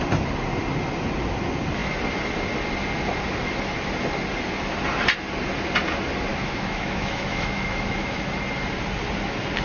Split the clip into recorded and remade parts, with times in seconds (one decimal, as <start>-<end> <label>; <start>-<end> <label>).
0.0-6.3 recorded; 6.3-8.2 remade; 8.2-9.6 recorded